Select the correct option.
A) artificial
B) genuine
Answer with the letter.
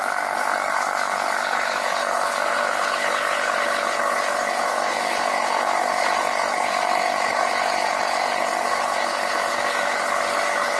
A